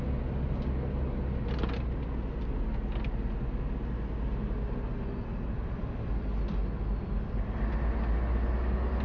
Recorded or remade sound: recorded